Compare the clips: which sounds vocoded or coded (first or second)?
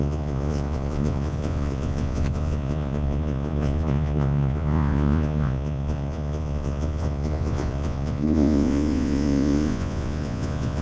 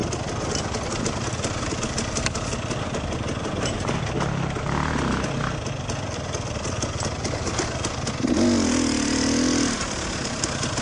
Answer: first